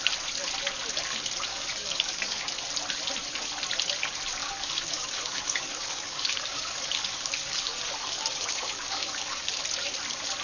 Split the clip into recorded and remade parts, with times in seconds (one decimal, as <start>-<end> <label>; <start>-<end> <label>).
0.0-1.5 recorded; 1.5-2.6 remade; 2.6-4.4 recorded; 4.4-9.5 remade; 9.5-10.4 recorded